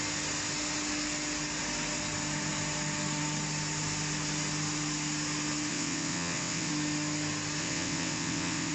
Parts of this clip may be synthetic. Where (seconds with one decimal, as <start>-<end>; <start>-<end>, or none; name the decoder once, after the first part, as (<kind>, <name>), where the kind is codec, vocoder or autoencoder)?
5.7-6.7 (vocoder, WaveNeXt); 7.6-8.7